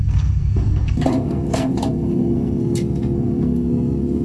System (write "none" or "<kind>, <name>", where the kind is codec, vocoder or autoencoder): codec, SNAC